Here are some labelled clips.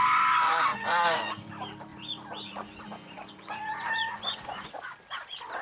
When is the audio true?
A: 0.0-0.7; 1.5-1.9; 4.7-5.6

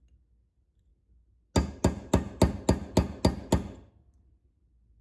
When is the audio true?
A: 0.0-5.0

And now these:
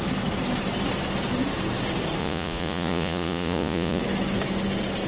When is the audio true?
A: 0.0-2.2; 4.0-5.1